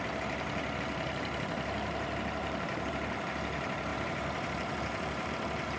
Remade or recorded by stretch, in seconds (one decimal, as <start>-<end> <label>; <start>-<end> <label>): 0.0-2.4 recorded; 2.4-2.9 remade; 2.9-3.9 recorded; 3.9-5.3 remade; 5.3-5.8 recorded